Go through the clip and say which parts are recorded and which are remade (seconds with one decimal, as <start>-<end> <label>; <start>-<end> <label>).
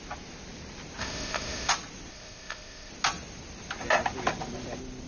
0.0-1.0 recorded; 1.0-1.7 remade; 1.7-2.1 recorded; 2.1-2.9 remade; 2.9-5.1 recorded